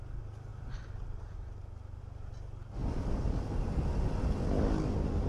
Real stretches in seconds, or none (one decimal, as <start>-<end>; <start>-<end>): 0.0-0.5; 2.0-2.8; 3.9-5.3